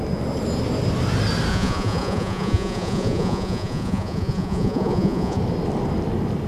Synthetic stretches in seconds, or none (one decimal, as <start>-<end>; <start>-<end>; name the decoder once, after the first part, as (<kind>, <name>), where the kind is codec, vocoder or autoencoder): 1.5-5.4 (vocoder, Vocos)